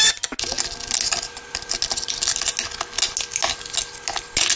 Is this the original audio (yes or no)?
yes